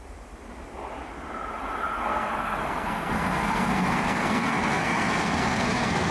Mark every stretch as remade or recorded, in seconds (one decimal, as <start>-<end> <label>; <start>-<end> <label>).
0.0-2.1 recorded; 2.1-6.1 remade